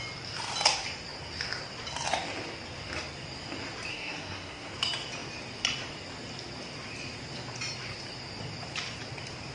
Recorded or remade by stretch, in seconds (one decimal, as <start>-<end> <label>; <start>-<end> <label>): 0.0-3.9 recorded; 3.9-4.7 remade; 4.7-9.5 recorded